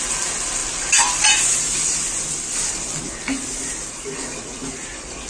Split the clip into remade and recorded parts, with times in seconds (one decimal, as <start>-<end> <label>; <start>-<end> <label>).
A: 0.0-5.3 recorded